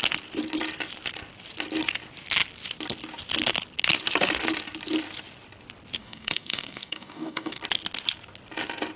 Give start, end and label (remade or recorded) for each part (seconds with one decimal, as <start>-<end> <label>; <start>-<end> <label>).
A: 0.0-6.0 recorded; 6.0-7.6 remade; 7.6-9.0 recorded